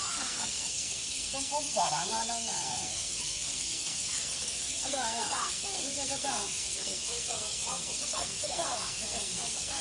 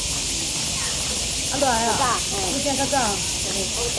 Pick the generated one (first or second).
first